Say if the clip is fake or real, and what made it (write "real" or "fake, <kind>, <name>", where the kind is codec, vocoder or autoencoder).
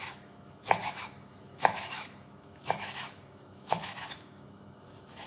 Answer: fake, autoencoder, DAC-VAE